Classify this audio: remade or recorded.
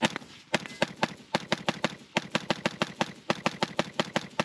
recorded